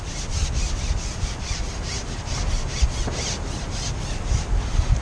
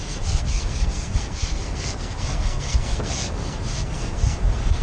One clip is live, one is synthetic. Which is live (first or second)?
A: first